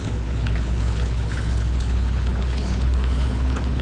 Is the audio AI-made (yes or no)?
yes